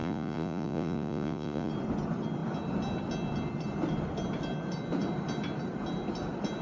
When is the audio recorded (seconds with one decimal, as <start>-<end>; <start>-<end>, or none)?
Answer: 1.7-6.6